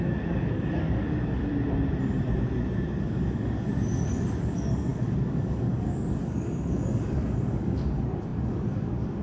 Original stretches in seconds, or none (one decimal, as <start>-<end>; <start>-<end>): 1.5-3.0; 3.7-4.4